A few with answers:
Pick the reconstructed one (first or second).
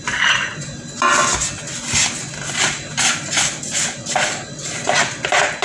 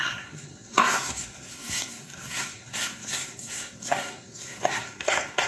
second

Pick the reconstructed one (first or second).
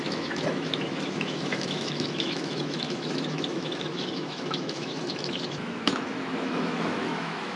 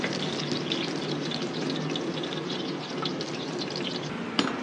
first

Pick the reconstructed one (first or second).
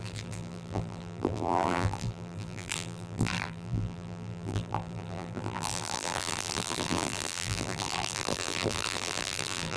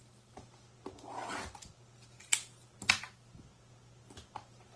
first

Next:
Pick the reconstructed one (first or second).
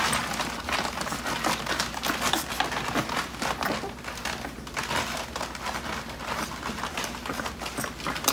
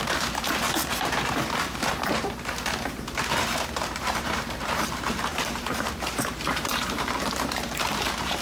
second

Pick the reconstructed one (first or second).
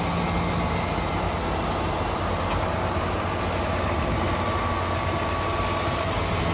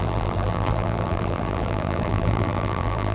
second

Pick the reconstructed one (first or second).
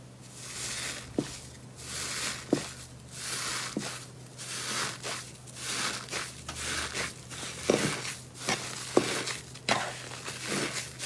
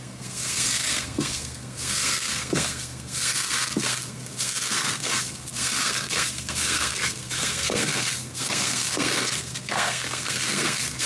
second